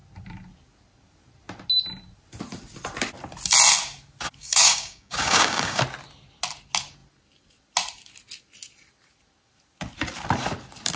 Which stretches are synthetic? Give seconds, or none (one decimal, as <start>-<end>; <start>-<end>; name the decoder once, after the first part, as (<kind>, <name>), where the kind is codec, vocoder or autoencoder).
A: 4.4-5.8 (codec, DAC)